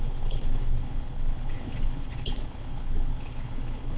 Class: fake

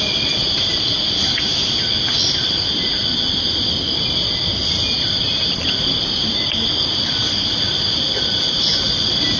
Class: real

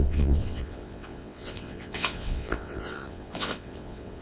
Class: fake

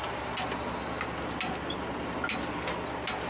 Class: real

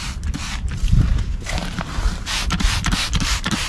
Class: fake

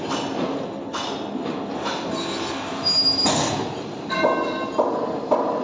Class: real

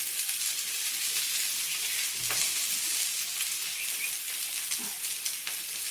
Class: real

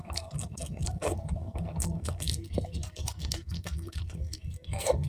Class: fake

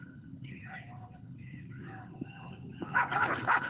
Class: fake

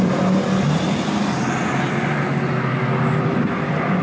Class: real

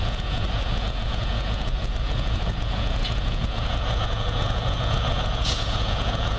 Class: fake